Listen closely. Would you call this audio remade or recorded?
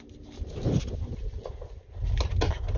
recorded